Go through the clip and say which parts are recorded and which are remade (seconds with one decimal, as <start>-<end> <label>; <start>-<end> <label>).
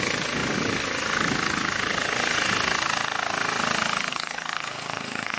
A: 0.0-4.1 recorded; 4.1-5.4 remade